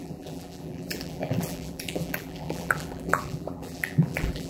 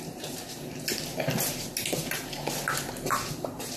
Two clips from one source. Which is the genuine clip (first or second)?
second